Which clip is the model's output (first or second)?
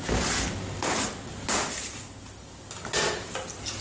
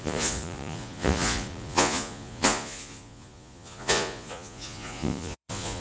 second